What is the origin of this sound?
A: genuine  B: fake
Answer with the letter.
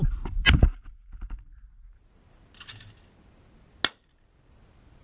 A